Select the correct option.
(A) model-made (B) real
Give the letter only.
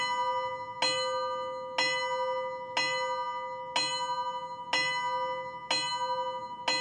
B